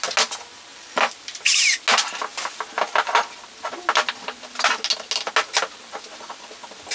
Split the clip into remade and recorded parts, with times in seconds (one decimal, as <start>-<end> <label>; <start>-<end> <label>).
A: 0.0-6.9 recorded